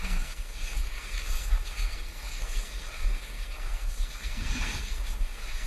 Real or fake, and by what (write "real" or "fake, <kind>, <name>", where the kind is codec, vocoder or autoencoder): fake, codec, SNAC